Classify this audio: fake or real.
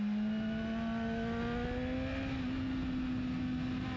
real